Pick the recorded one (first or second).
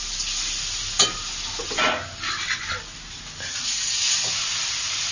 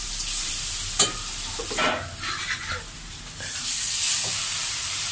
first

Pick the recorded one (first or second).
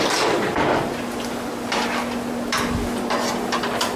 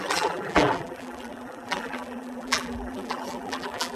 first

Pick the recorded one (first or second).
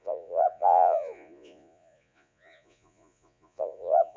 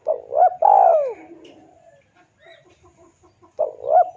second